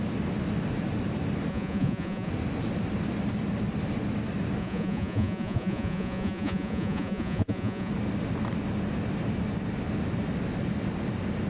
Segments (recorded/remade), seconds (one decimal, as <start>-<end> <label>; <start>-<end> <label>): 0.0-1.5 recorded; 1.5-2.3 remade; 2.3-4.6 recorded; 4.6-7.9 remade; 7.9-11.5 recorded